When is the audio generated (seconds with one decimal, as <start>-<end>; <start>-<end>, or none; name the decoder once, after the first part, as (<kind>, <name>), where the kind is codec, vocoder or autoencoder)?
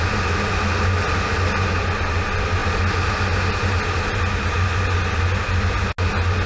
none